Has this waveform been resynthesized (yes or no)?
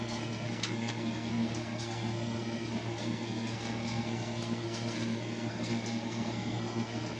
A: yes